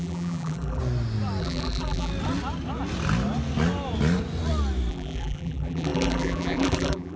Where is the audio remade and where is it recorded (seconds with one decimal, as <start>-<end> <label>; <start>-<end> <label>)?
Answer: 0.0-0.8 remade; 0.8-1.4 recorded; 1.4-2.1 remade; 2.1-4.9 recorded; 4.9-7.2 remade